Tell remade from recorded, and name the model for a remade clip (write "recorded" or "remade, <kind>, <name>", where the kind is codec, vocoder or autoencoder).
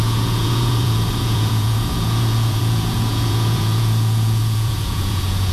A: remade, vocoder, Vocos